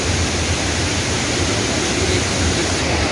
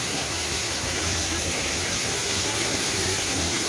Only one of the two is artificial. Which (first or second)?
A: second